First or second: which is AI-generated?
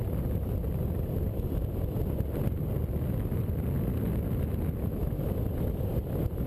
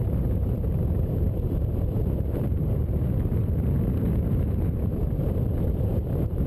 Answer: second